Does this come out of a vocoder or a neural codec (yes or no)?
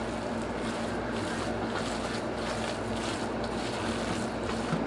no